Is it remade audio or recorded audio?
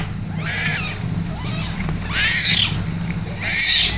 recorded